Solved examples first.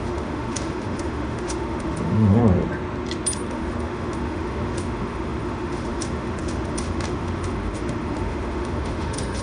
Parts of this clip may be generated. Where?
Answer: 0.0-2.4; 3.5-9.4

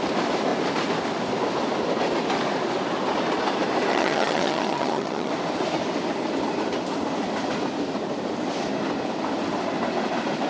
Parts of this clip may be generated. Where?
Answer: 3.9-5.3

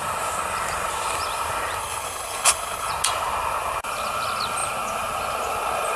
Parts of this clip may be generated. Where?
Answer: 1.8-2.9

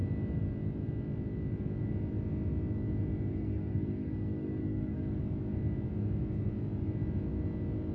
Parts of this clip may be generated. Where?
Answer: 3.3-5.2